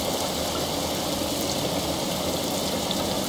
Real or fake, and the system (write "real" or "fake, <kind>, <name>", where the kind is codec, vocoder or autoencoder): real